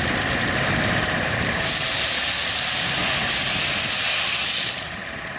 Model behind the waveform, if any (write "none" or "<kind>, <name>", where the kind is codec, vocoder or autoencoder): none